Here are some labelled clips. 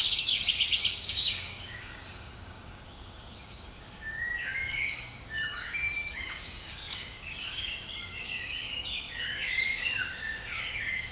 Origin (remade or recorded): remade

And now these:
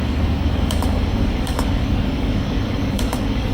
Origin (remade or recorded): remade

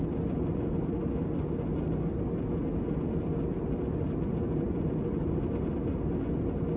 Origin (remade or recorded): recorded